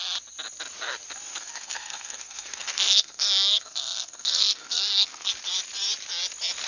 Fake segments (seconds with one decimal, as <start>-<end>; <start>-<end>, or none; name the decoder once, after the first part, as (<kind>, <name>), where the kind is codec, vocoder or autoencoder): 1.3-5.3 (codec, SNAC)